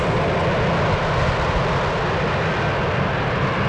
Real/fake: real